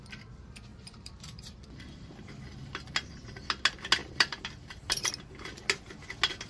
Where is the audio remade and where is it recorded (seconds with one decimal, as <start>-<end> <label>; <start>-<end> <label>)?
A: 0.0-0.7 recorded; 0.7-2.8 remade; 2.8-4.0 recorded; 4.0-5.1 remade; 5.1-6.5 recorded